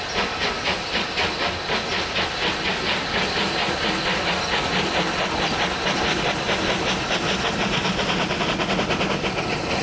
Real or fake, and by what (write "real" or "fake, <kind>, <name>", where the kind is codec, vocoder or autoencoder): real